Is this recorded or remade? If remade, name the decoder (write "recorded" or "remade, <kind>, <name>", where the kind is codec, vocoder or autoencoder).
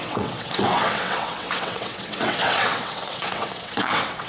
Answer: remade, vocoder, WaveNeXt